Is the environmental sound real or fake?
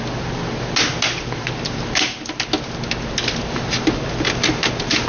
real